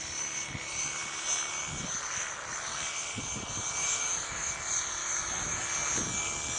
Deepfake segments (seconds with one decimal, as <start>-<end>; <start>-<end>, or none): 3.8-4.5; 5.0-5.6